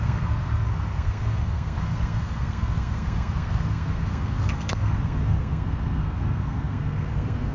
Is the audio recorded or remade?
remade